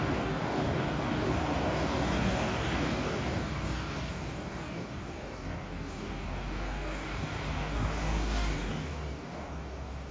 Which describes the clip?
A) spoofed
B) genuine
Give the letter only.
A